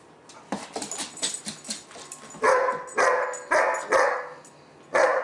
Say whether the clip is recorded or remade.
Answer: recorded